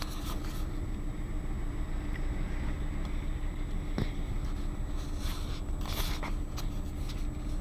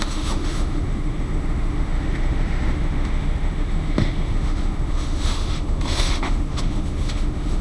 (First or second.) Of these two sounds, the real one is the first